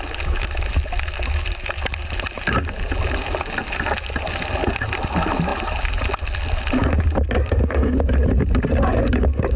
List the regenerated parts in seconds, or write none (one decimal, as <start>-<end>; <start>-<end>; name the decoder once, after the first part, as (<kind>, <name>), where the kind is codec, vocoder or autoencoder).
none